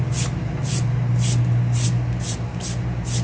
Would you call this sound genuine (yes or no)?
yes